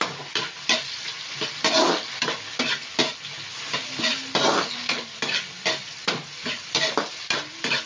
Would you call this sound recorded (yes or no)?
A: yes